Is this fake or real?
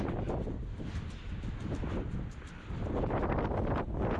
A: real